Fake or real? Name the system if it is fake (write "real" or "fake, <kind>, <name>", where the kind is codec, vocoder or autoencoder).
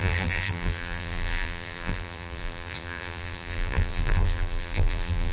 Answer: fake, vocoder, BigVGAN v2